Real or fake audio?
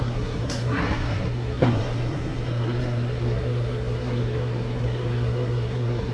fake